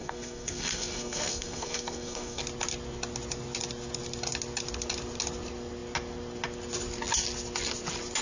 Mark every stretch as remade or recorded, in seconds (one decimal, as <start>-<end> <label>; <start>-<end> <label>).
0.0-2.4 remade; 2.4-8.2 recorded

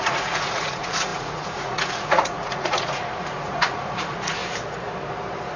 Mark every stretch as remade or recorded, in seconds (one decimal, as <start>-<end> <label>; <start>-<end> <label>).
0.0-4.4 remade; 4.4-5.6 recorded

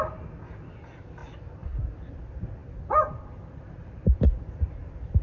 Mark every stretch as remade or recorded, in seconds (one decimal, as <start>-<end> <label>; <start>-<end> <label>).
0.0-2.6 recorded; 2.6-4.2 remade; 4.2-5.2 recorded

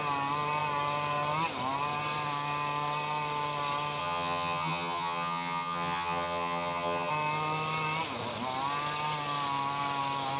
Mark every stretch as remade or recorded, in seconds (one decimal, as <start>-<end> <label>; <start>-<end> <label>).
0.0-4.0 recorded; 4.0-7.1 remade; 7.1-10.4 recorded